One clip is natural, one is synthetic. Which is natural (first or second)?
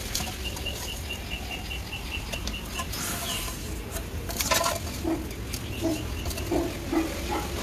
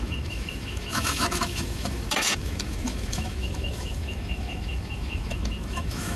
first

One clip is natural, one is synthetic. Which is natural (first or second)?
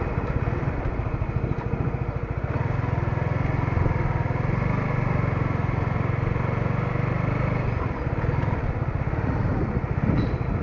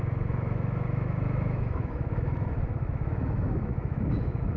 first